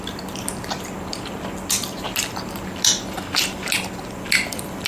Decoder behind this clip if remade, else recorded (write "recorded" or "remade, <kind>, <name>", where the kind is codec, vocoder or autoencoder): recorded